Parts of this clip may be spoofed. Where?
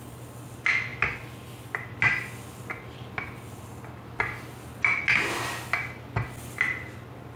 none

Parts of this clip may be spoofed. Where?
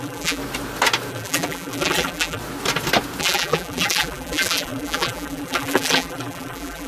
0.0-0.4 (vocoder, BigVGAN v2); 1.1-2.4; 3.2-6.9